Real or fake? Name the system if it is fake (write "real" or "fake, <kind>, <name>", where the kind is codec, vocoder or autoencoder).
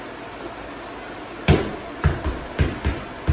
real